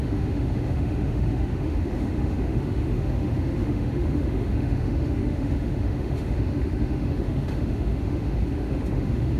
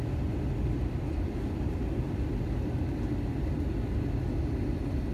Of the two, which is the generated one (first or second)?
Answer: first